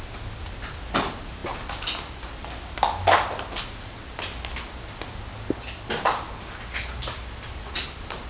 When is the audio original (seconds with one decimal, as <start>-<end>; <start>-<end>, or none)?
0.0-8.3